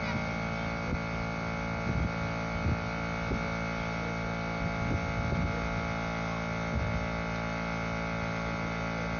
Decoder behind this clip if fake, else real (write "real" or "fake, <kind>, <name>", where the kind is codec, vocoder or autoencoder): real